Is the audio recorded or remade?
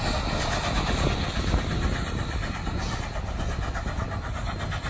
recorded